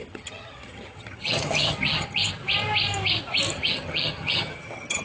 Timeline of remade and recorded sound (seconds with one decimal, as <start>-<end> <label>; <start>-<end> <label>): 0.0-2.2 remade; 2.2-3.5 recorded; 3.5-5.0 remade